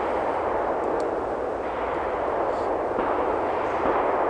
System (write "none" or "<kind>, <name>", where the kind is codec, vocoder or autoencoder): none